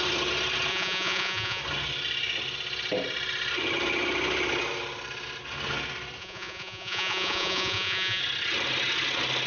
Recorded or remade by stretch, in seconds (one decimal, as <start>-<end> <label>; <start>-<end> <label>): 0.0-0.7 recorded; 0.7-1.6 remade; 1.6-6.2 recorded; 6.2-8.2 remade; 8.2-9.5 recorded